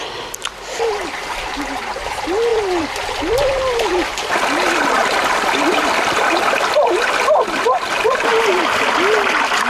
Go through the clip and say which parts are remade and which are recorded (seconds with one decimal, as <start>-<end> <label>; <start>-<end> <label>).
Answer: 0.0-2.5 recorded; 2.5-4.3 remade; 4.3-5.0 recorded; 5.0-7.9 remade; 7.9-9.7 recorded